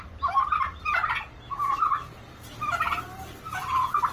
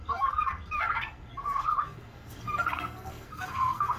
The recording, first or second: first